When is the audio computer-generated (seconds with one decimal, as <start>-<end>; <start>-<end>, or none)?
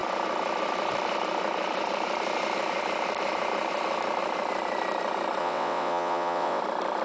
5.4-6.6